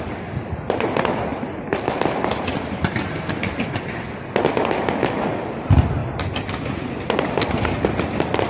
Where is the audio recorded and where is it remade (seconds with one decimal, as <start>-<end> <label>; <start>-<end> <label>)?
0.0-8.5 recorded